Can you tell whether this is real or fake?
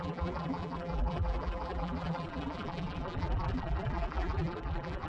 fake